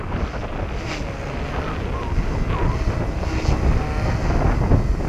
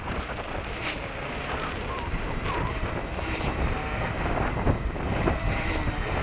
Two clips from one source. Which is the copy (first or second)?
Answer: second